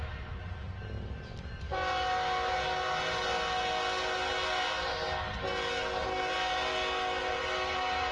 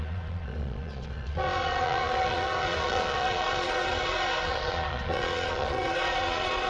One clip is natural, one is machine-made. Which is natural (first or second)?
first